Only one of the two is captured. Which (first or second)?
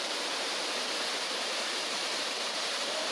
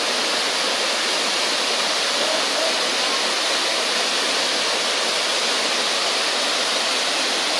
second